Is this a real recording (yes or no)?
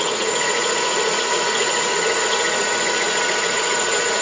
no